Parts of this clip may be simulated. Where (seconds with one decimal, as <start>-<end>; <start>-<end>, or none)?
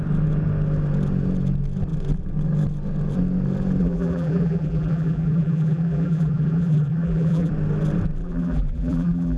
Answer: 3.8-7.5; 8.2-9.4